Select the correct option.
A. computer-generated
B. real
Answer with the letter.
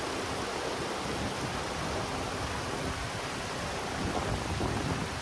B